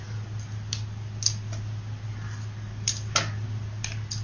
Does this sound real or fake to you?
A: real